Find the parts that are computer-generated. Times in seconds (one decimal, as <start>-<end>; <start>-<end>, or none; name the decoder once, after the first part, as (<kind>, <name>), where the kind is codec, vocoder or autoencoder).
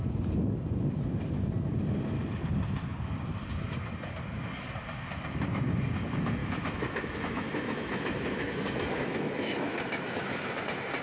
6.4-10.6 (autoencoder, DAC-VAE)